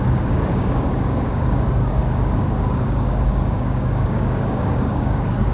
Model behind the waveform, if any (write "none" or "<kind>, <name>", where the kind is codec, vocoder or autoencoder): codec, DAC